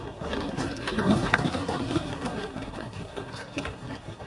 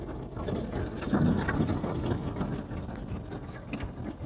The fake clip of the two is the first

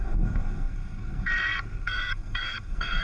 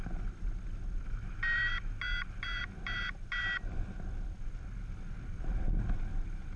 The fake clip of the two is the first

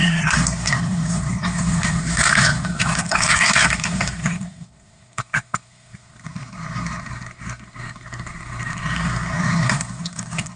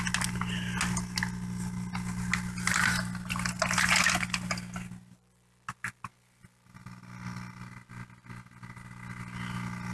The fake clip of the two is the first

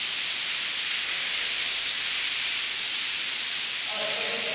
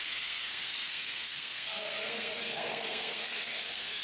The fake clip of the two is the second